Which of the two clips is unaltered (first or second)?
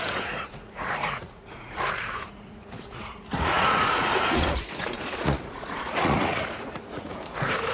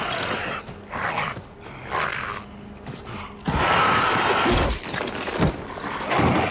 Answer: second